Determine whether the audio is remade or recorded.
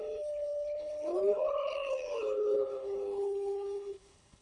remade